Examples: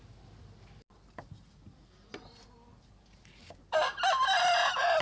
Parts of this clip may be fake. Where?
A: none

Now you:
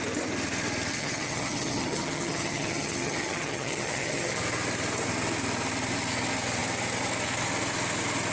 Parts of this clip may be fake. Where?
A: 0.9-4.4

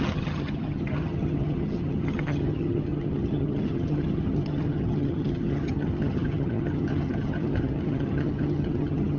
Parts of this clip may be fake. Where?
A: 0.0-9.2